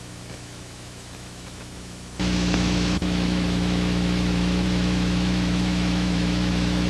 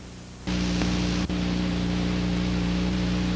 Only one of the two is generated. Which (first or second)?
first